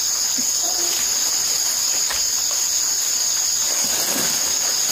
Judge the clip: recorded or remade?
recorded